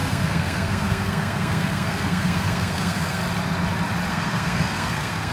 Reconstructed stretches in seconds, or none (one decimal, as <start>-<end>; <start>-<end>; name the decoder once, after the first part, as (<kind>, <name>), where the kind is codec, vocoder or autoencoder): 0.0-3.2 (codec, SNAC); 4.1-5.3